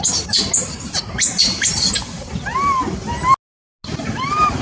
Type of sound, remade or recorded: recorded